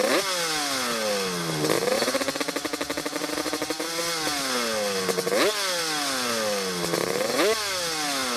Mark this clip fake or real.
real